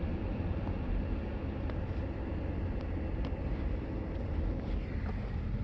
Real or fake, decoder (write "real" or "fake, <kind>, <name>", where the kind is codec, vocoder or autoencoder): real